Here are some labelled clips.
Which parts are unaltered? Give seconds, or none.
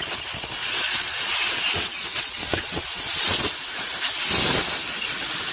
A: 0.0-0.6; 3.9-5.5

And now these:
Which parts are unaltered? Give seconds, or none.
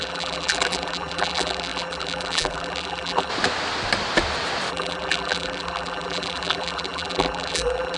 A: 3.3-4.7